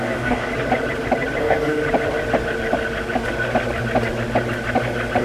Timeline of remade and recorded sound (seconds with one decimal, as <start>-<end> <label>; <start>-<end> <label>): 0.0-0.5 remade; 0.5-1.4 recorded; 1.4-1.8 remade; 1.8-5.2 recorded